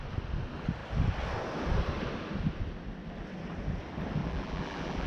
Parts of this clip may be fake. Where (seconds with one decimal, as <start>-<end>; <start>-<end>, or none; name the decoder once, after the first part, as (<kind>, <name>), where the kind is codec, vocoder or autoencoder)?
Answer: 4.2-5.1 (vocoder, BigVGAN v2)